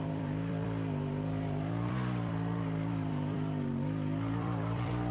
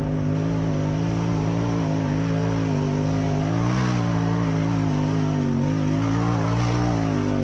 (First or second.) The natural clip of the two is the second